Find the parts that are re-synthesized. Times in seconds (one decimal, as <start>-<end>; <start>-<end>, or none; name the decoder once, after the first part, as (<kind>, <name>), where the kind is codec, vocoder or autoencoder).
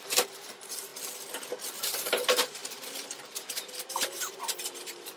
0.0-0.9 (vocoder, BigVGAN v2); 1.8-5.2